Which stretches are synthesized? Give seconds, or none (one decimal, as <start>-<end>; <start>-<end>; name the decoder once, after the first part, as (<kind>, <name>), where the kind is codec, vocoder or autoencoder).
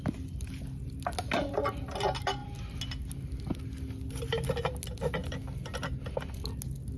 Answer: none